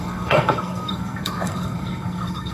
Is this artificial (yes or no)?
yes